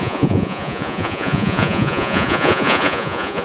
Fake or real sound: fake